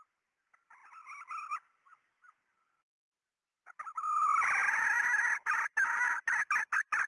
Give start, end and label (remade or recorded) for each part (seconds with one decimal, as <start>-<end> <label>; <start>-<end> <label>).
0.0-7.1 recorded

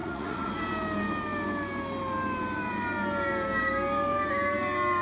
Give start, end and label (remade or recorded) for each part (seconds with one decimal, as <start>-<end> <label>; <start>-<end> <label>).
0.0-0.5 remade; 0.5-5.0 recorded

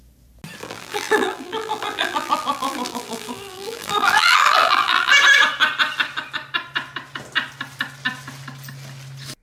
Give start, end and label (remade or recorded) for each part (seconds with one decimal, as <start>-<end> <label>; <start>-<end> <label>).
0.0-0.6 recorded; 0.6-5.1 remade; 5.1-9.4 recorded

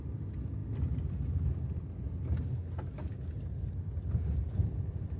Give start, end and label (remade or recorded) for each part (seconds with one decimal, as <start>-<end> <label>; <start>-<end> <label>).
0.0-5.2 recorded

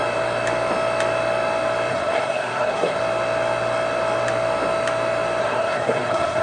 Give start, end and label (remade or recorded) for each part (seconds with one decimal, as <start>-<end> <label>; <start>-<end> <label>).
0.0-1.9 recorded; 1.9-3.0 remade; 3.0-5.4 recorded; 5.4-6.4 remade